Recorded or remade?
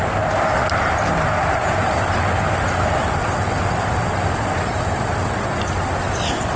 recorded